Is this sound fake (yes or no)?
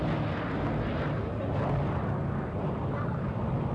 no